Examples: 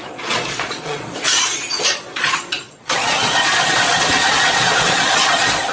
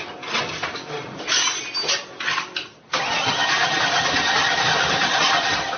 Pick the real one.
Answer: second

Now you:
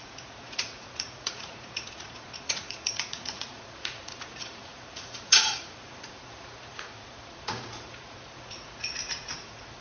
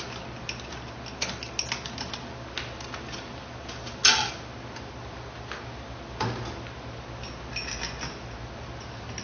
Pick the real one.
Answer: second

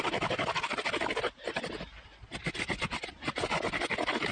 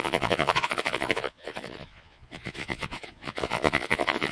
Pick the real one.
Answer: first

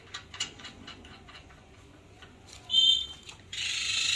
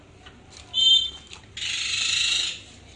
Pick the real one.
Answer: second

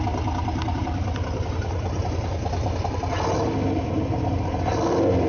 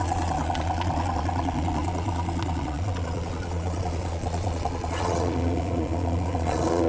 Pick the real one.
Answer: first